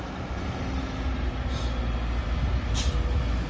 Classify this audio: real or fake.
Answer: real